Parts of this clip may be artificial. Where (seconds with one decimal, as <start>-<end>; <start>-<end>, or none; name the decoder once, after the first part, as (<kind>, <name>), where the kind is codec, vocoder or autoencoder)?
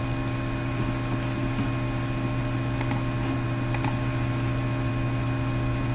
none